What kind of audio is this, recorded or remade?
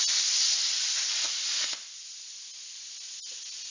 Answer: recorded